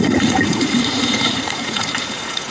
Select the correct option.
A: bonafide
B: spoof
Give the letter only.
B